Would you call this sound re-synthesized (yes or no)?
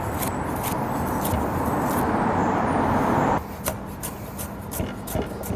no